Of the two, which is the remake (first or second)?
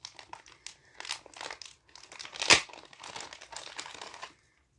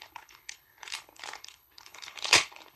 second